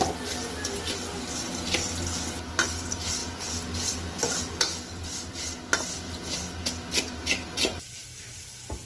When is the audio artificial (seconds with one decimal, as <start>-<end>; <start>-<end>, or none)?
none